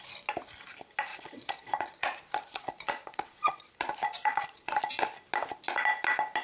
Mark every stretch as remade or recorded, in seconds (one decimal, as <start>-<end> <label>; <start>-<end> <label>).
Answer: 0.0-1.1 recorded; 1.1-4.9 remade; 4.9-6.4 recorded

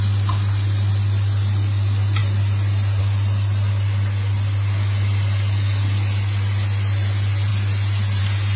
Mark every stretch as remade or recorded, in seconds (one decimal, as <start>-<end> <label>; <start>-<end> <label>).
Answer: 0.0-8.6 recorded

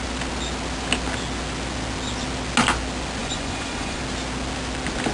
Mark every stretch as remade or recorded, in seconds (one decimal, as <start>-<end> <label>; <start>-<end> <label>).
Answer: 0.0-3.2 recorded; 3.2-4.0 remade; 4.0-5.1 recorded

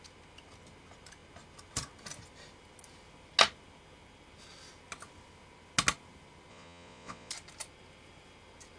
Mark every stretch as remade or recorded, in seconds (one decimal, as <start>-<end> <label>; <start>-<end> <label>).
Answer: 0.0-6.5 recorded; 6.5-7.3 remade; 7.3-8.8 recorded

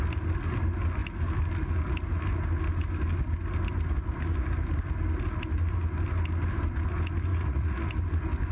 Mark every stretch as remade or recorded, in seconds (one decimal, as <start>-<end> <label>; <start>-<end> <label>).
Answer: 0.0-7.3 recorded; 7.3-7.9 remade; 7.9-8.5 recorded